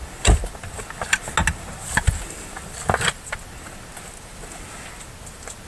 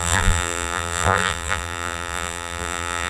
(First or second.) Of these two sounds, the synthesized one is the second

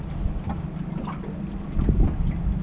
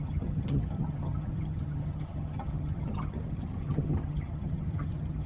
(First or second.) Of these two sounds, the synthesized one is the second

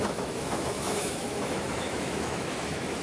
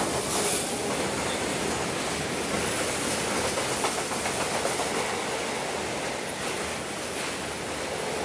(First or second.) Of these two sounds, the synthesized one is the first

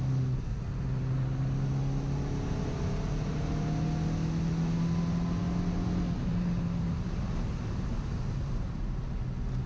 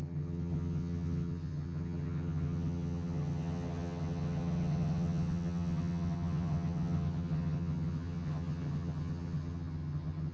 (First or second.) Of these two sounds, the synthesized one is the second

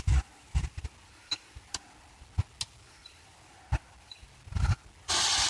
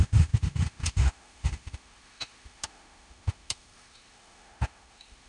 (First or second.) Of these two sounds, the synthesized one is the second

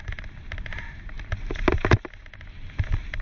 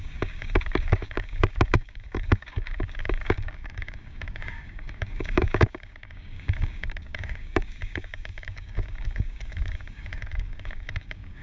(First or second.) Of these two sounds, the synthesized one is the second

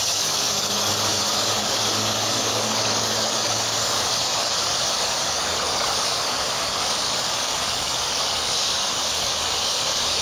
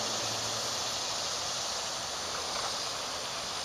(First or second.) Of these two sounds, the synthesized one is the first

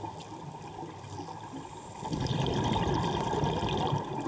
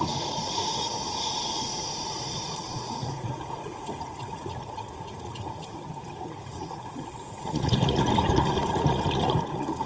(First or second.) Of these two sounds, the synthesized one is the second